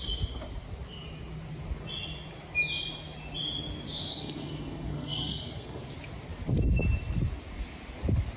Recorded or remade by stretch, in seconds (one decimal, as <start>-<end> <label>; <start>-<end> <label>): 0.0-4.1 recorded; 4.1-5.8 remade; 5.8-8.4 recorded